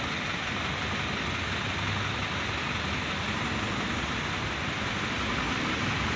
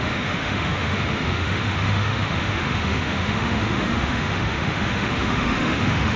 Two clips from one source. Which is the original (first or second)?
first